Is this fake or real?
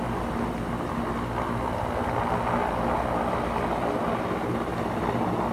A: real